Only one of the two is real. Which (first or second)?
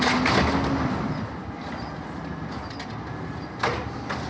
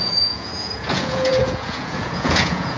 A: first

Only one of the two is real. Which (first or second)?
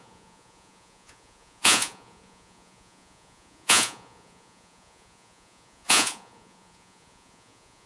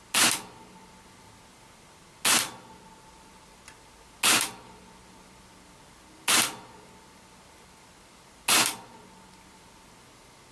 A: second